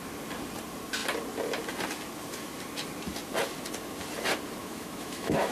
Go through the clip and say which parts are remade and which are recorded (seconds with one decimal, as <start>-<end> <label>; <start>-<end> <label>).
0.0-4.6 recorded; 4.6-5.5 remade